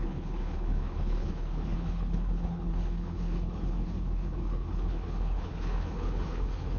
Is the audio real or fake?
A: fake